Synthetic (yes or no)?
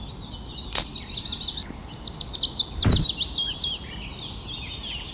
no